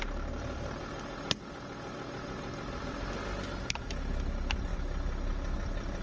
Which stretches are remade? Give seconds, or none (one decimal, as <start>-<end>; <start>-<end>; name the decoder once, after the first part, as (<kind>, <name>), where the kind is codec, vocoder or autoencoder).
none